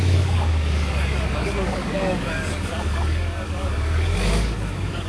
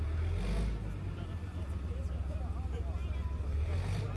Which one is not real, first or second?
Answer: first